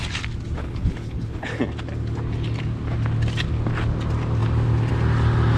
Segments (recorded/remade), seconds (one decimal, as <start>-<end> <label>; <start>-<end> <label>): 0.0-0.6 recorded; 0.6-1.6 remade; 1.6-5.6 recorded